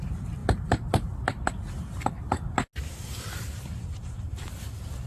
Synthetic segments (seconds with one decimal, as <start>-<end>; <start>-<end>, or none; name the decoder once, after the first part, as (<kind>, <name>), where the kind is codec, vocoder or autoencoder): none